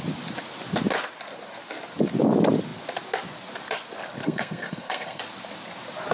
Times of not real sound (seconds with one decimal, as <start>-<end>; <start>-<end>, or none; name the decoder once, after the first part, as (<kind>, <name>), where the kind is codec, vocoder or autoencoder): 4.2-5.2 (codec, SNAC)